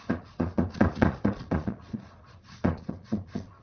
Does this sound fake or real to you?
fake